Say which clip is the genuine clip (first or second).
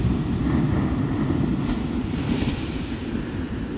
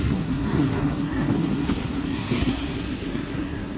first